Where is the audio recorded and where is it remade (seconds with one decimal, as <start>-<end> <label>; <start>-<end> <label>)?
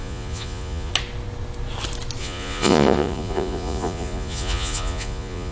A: 0.0-0.9 remade; 0.9-2.2 recorded; 2.2-5.5 remade